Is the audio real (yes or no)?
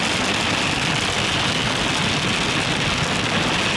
yes